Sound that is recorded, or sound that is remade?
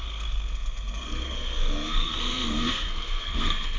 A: remade